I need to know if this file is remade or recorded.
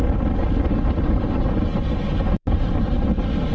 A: remade